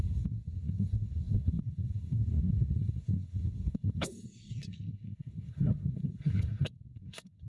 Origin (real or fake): fake